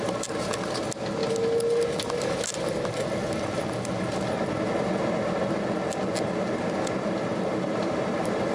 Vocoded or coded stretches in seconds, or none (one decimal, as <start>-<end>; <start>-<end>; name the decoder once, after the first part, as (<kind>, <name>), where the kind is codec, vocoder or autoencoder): 7.3-8.5 (vocoder, BigVGAN v2)